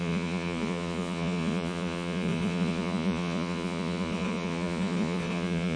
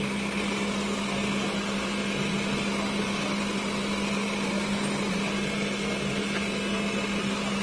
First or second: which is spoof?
first